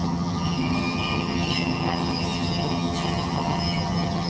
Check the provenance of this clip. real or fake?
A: fake